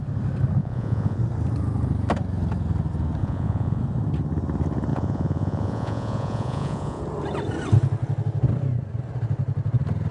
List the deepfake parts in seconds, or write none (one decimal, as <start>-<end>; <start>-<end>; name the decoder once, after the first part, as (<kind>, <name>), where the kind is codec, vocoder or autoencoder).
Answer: 0.6-1.2 (vocoder, Vocos); 3.2-3.8; 4.9-7.0